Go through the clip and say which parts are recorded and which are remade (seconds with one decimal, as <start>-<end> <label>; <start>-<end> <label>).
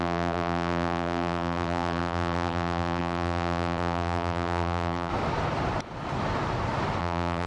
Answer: 0.0-5.1 remade; 5.1-7.0 recorded; 7.0-7.5 remade